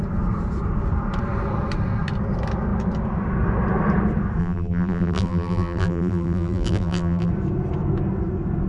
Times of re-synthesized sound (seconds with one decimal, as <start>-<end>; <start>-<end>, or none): 4.4-7.3